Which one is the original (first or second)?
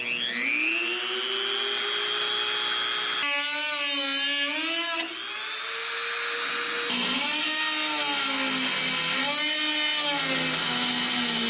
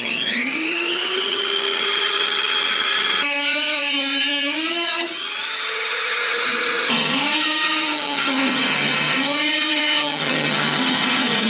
first